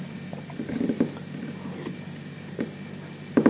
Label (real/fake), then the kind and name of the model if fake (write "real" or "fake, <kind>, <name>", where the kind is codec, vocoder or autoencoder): real